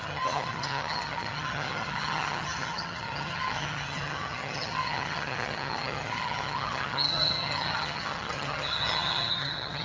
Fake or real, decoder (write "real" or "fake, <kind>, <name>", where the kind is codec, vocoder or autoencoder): fake, vocoder, HiFi-GAN